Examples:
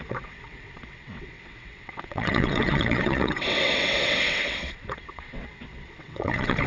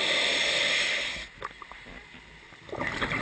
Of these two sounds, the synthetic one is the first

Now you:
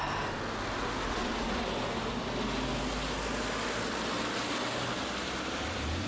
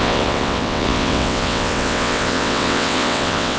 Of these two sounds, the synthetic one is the second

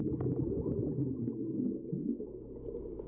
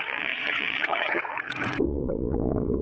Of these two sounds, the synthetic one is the second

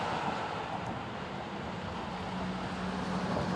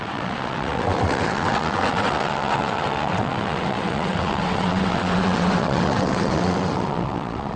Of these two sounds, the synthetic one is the second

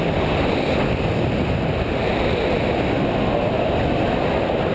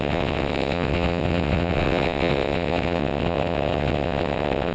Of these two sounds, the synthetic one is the second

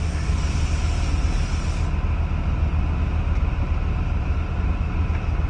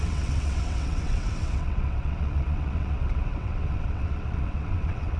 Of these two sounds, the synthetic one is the second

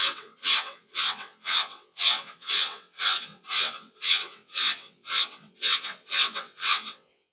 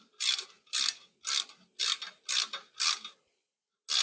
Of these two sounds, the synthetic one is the first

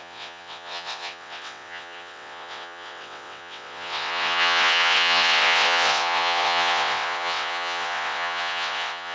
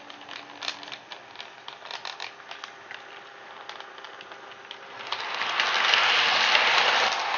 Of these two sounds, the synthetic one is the first